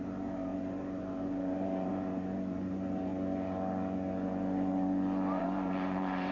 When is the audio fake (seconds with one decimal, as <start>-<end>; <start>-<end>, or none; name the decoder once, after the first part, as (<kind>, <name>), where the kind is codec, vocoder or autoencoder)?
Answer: 0.0-3.1 (vocoder, BigVGAN v2); 5.4-6.3